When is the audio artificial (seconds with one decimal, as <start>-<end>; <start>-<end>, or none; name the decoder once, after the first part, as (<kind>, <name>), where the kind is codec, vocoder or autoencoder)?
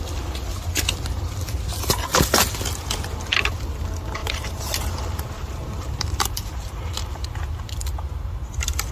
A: 4.2-7.3 (vocoder, BigVGAN v2)